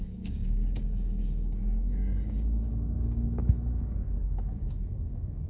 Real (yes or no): no